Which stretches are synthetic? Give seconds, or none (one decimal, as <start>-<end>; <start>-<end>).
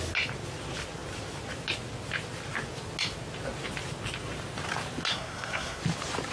5.1-5.8